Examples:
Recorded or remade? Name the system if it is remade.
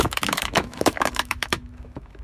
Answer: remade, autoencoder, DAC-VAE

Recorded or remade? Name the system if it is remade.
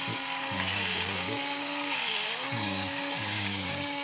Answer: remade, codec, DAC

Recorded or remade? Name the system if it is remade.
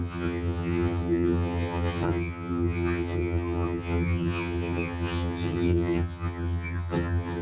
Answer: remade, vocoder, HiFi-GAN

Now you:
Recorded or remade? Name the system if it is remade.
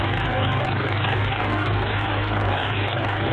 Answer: remade, codec, DAC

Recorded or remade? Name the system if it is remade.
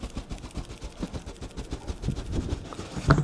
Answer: recorded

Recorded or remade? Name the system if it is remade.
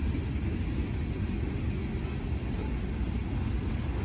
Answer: recorded